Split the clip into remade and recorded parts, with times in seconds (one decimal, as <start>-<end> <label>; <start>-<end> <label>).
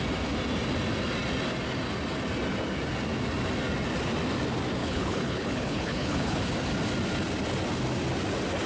0.0-4.8 recorded; 4.8-6.4 remade; 6.4-8.7 recorded